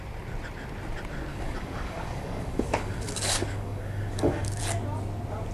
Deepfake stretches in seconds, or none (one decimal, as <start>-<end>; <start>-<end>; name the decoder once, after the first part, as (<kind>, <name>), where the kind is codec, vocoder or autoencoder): 1.3-4.6 (codec, DAC)

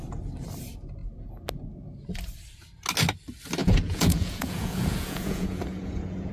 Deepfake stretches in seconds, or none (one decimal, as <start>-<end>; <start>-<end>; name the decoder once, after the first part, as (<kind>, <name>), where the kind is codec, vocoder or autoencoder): 3.6-6.3 (vocoder, Vocos)

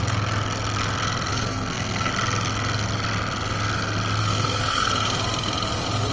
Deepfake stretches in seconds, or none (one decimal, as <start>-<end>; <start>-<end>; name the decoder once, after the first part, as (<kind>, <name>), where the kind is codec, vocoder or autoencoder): 1.3-2.1 (codec, SNAC); 4.2-4.9